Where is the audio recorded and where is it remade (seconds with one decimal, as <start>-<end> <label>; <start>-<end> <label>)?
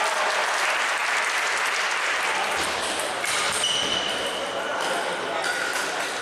0.0-6.2 recorded